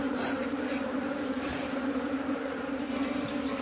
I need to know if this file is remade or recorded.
remade